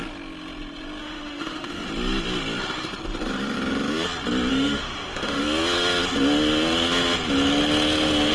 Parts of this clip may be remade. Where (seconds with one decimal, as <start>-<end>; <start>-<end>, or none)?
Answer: 1.0-1.9; 4.5-5.4